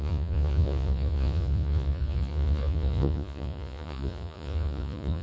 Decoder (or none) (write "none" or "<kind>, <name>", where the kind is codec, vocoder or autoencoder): vocoder, Vocos